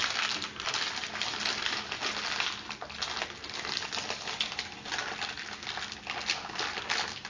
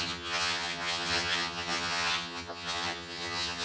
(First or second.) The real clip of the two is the first